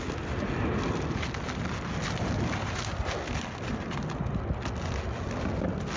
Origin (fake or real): real